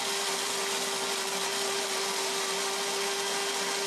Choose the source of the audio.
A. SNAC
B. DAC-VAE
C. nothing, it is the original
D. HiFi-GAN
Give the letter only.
C